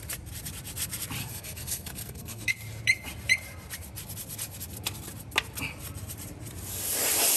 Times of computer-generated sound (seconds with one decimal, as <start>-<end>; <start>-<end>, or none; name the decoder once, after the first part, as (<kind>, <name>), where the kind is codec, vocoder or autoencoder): 1.2-2.5 (codec, SNAC)